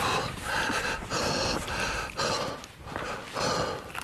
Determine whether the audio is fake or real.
real